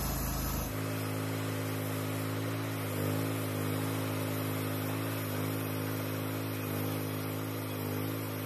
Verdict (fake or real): real